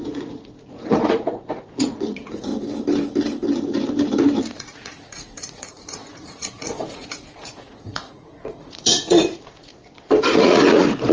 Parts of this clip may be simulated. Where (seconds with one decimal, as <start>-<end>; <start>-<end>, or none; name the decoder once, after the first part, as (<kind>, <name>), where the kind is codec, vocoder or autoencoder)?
0.0-2.5 (vocoder, Vocos); 4.4-9.7; 10.2-11.1